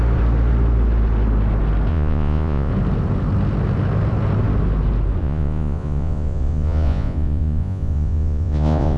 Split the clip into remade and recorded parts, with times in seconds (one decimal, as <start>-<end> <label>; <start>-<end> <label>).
0.0-1.9 recorded; 1.9-2.7 remade; 2.7-5.2 recorded; 5.2-9.0 remade

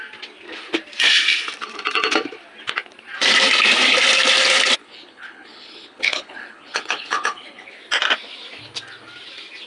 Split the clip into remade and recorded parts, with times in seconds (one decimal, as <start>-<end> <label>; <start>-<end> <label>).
0.0-4.8 recorded; 4.8-7.7 remade; 7.7-9.7 recorded

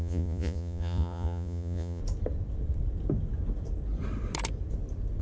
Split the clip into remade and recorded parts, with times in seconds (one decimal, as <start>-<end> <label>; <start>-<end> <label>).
0.0-2.0 remade; 2.0-5.2 recorded

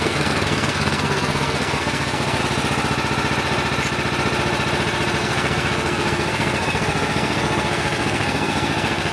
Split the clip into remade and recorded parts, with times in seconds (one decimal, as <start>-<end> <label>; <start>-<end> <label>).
0.0-2.4 remade; 2.4-5.2 recorded; 5.2-9.1 remade

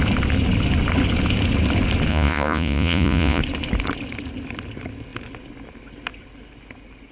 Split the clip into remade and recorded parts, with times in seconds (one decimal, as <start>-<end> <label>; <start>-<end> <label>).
0.0-2.1 recorded; 2.1-3.4 remade; 3.4-7.1 recorded

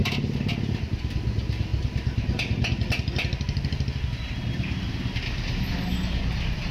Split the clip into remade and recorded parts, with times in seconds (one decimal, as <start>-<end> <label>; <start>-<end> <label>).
0.0-0.9 remade; 0.9-6.7 recorded